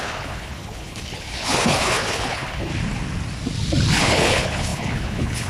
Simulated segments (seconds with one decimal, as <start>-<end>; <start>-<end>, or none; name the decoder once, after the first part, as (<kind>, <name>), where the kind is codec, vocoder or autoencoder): 0.0-2.7 (codec, HILCodec); 4.0-5.5

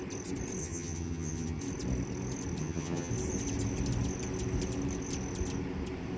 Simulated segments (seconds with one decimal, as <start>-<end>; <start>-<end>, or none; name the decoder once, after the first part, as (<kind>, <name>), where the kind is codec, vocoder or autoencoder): 0.6-1.6 (vocoder, HiFi-GAN); 2.6-3.1